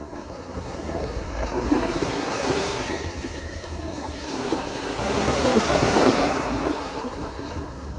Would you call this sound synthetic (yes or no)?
yes